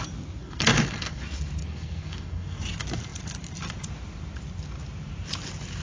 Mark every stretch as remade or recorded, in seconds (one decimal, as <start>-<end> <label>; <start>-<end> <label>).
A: 0.0-0.4 recorded; 0.4-1.2 remade; 1.2-1.6 recorded; 1.6-2.6 remade; 2.6-5.8 recorded